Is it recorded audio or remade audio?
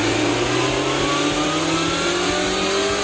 recorded